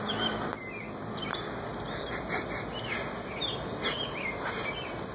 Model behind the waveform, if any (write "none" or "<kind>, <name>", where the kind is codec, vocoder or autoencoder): none